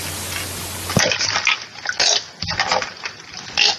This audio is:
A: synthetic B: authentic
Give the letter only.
B